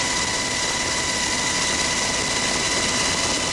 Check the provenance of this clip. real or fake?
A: real